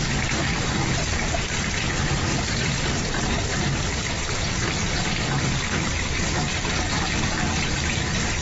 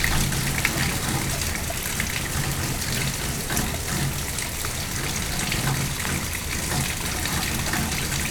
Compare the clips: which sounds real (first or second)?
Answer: second